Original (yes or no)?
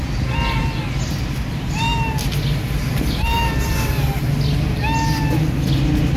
yes